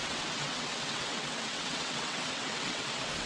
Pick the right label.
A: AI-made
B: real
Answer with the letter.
A